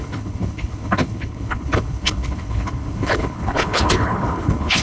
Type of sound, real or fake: fake